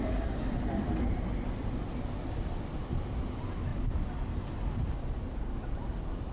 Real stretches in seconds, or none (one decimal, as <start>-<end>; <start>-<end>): 0.0-6.3

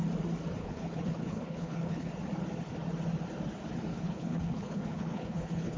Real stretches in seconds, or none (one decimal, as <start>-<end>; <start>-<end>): 0.0-0.6; 2.1-3.9